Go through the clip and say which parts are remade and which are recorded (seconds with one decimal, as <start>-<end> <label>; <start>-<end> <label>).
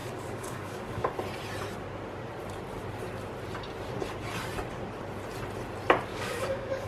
0.0-1.1 remade; 1.1-6.1 recorded; 6.1-6.9 remade